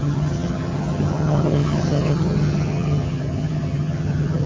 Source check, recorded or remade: remade